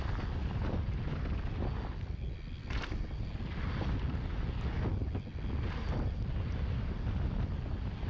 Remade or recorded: recorded